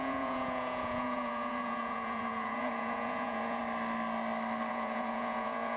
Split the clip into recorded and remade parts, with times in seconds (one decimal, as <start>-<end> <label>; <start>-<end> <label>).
0.0-3.6 remade; 3.6-4.7 recorded; 4.7-5.8 remade